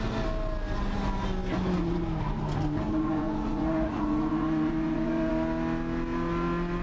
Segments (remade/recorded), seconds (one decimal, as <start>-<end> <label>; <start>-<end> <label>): 0.0-2.9 recorded; 2.9-5.3 remade; 5.3-6.8 recorded